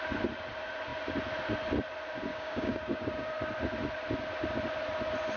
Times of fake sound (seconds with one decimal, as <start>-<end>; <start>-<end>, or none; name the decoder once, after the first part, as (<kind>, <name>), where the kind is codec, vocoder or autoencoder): 2.3-3.3 (codec, DAC)